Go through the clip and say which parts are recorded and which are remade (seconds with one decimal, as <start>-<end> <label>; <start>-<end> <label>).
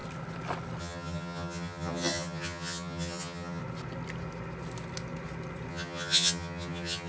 0.0-0.8 recorded; 0.8-3.6 remade; 3.6-5.7 recorded; 5.7-7.1 remade